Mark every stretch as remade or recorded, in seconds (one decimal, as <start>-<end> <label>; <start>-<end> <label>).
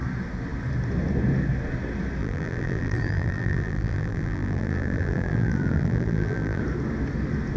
0.0-2.2 recorded; 2.2-6.6 remade; 6.6-7.6 recorded